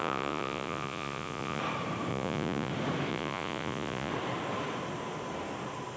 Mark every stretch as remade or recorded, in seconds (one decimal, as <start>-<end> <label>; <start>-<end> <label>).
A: 0.0-1.6 remade; 1.6-2.1 recorded; 2.1-2.7 remade; 2.7-3.1 recorded; 3.1-4.1 remade; 4.1-6.0 recorded